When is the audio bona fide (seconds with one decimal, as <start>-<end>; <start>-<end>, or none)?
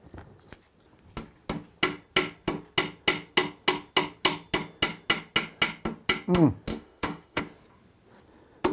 0.0-6.7; 7.4-8.7